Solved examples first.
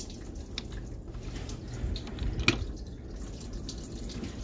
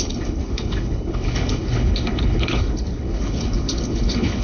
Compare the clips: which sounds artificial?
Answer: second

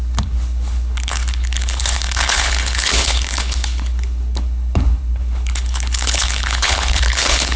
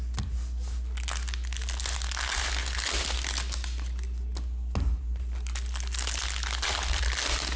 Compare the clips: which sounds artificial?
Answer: first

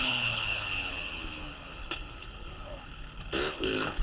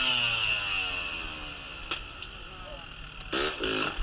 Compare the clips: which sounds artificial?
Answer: first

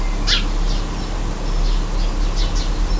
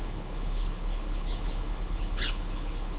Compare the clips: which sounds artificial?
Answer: second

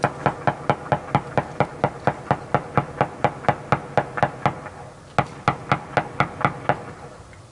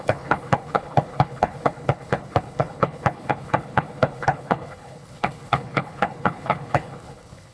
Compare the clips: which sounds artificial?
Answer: second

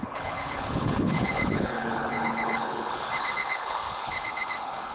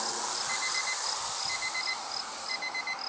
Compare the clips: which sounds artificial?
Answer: first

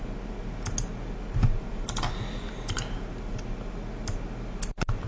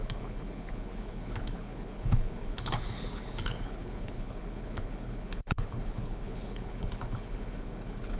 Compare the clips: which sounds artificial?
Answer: second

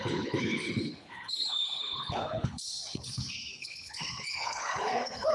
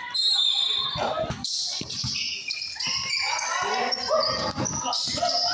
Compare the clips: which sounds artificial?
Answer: first